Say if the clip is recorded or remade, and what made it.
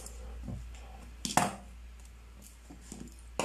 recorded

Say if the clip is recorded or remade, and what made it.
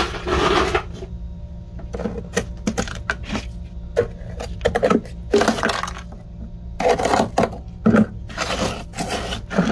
recorded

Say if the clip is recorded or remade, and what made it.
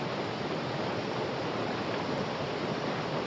recorded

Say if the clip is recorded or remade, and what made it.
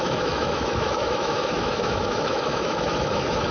remade, autoencoder, DAC-VAE